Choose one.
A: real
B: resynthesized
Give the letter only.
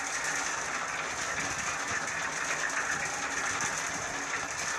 A